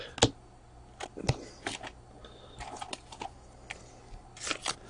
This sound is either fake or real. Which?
real